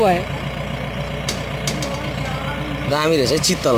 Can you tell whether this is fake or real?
real